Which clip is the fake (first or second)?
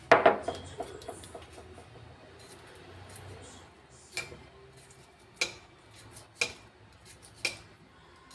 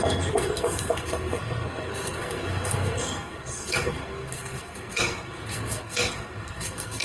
second